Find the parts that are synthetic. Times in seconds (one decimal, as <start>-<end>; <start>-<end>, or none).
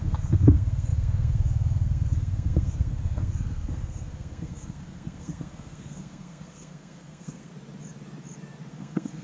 0.0-7.5; 8.7-9.2